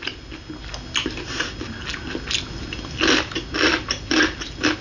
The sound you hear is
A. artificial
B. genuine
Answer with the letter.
B